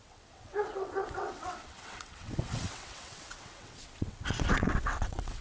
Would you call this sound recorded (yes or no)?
no